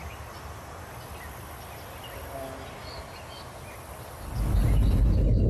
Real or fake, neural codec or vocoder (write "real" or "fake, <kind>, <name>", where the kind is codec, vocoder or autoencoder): real